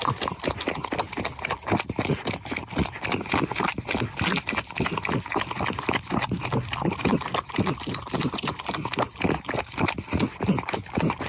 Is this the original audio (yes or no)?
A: yes